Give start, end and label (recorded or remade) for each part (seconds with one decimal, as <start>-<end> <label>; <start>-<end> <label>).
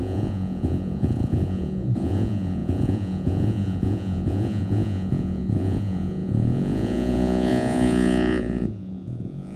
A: 0.0-9.6 remade